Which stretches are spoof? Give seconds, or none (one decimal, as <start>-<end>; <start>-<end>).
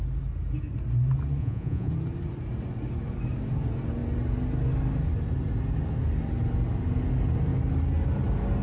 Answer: 1.4-1.9